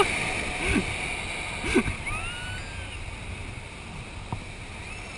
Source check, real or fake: real